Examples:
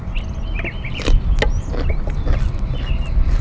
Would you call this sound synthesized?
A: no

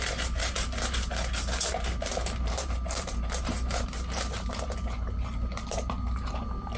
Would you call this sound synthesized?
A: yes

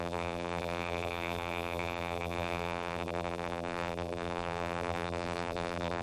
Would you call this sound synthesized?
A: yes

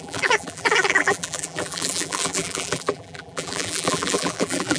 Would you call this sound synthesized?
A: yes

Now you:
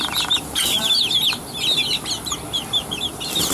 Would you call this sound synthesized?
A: no